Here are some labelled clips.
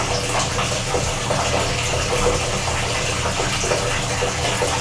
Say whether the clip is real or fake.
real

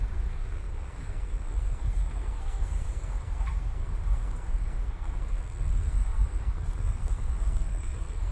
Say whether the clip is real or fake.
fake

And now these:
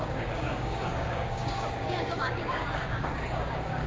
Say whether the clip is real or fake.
fake